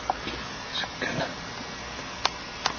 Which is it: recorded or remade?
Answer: recorded